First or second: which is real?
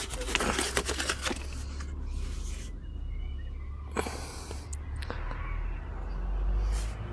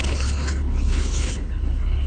first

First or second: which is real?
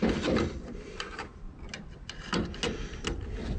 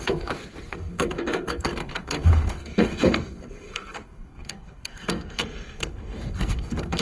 first